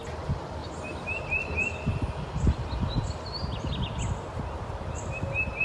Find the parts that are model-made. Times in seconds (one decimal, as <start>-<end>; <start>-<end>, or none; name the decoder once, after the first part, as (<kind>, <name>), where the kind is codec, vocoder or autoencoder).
0.6-1.2 (vocoder, BigVGAN v2)

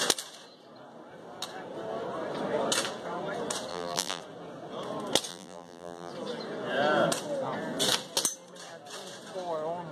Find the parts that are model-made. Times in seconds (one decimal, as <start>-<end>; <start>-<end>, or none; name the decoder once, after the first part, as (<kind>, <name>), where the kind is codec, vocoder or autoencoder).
3.7-4.2 (vocoder, BigVGAN v2); 5.3-6.1